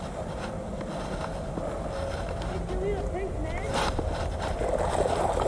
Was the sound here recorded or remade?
recorded